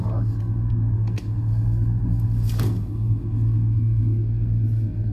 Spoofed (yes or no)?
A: yes